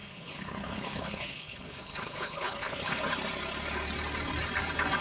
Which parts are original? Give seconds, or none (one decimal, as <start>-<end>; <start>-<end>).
3.0-5.0